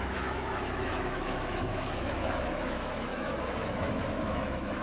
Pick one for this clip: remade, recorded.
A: remade